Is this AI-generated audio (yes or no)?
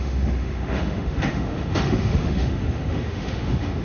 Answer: yes